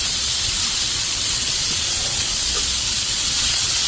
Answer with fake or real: fake